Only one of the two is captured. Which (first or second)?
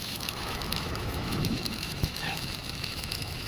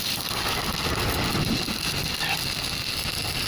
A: second